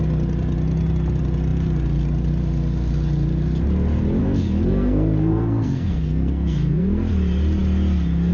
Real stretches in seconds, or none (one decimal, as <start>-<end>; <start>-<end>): 0.0-4.2; 7.1-8.3